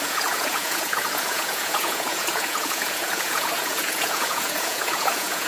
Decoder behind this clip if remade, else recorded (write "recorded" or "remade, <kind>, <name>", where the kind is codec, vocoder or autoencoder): remade, vocoder, Vocos